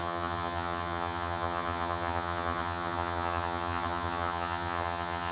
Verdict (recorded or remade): remade